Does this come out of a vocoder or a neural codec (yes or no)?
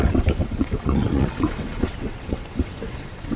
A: yes